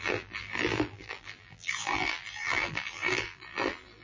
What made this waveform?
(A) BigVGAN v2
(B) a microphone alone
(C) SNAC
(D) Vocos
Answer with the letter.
A